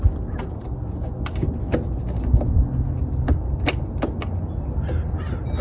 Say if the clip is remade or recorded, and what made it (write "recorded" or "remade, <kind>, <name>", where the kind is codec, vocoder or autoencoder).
recorded